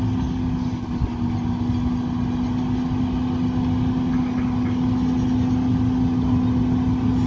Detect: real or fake real